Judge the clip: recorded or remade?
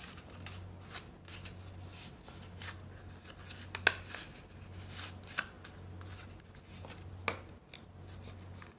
recorded